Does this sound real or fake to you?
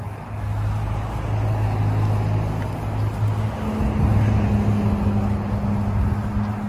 real